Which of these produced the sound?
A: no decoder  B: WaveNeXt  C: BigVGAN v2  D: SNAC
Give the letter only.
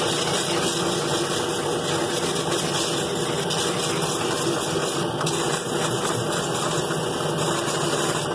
A